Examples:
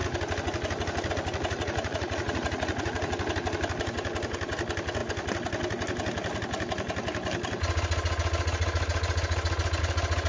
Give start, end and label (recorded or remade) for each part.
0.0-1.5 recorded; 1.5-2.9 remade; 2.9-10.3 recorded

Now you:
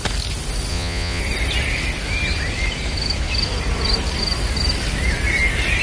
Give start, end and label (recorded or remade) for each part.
0.0-0.7 recorded; 0.7-1.2 remade; 1.2-5.8 recorded

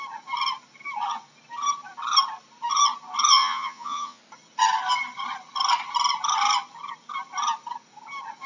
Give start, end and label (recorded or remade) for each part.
0.0-3.3 recorded; 3.3-4.2 remade; 4.2-8.5 recorded

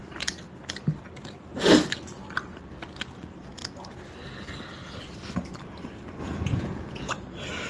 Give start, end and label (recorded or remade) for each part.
0.0-6.2 recorded; 6.2-7.1 remade; 7.1-7.7 recorded